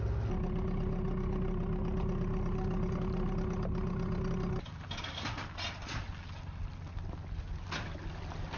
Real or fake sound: real